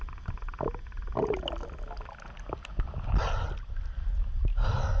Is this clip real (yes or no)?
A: yes